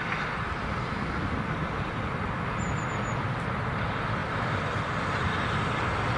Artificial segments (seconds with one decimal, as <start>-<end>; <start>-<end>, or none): none